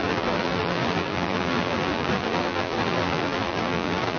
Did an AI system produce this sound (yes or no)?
yes